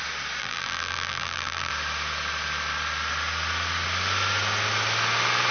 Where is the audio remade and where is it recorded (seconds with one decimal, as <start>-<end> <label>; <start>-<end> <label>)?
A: 0.0-0.4 recorded; 0.4-1.7 remade; 1.7-5.5 recorded